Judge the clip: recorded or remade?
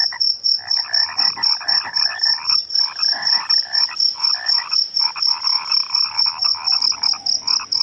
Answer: recorded